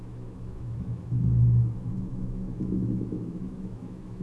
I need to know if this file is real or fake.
fake